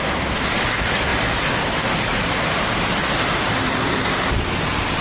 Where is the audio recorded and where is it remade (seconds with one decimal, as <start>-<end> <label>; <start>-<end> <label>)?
0.0-5.0 recorded